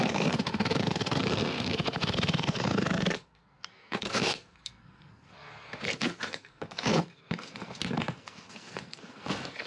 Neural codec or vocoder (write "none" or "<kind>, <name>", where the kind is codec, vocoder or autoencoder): codec, SNAC